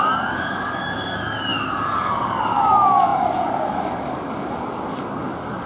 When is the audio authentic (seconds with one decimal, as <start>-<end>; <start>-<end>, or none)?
none